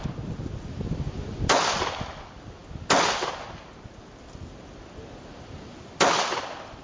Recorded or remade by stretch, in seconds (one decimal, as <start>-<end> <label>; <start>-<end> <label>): 0.0-6.8 recorded

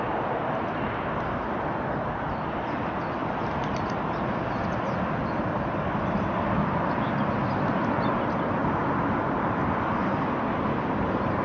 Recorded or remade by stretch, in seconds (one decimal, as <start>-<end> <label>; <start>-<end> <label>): 0.0-11.4 recorded

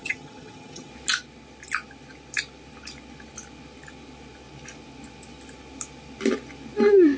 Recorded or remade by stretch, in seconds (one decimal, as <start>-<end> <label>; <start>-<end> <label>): 0.0-0.9 remade; 0.9-7.2 recorded

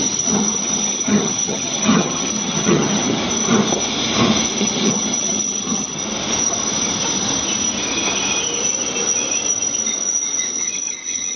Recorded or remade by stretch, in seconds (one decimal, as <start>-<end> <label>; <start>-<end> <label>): 0.0-3.2 remade; 3.2-4.6 recorded; 4.6-6.0 remade; 6.0-10.5 recorded; 10.5-11.4 remade

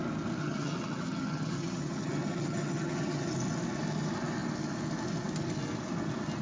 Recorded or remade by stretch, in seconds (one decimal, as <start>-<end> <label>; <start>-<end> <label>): 0.0-0.4 recorded; 0.4-3.3 remade; 3.3-6.4 recorded